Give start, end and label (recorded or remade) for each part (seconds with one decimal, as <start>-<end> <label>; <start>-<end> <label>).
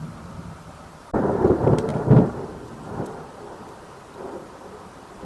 0.0-5.2 remade